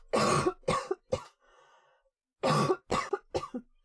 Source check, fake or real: real